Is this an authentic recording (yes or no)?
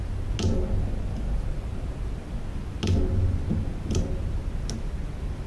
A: yes